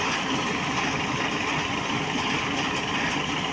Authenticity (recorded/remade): recorded